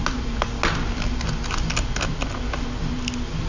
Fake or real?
real